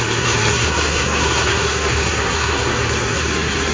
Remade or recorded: remade